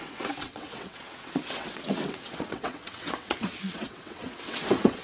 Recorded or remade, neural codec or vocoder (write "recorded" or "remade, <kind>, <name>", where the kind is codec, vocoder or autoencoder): remade, vocoder, WaveNeXt